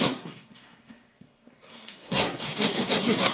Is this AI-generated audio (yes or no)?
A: yes